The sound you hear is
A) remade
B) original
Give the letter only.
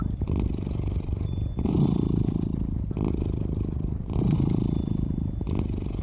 B